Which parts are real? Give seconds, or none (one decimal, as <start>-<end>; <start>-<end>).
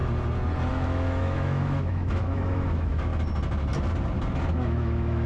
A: 0.0-0.7; 3.1-4.5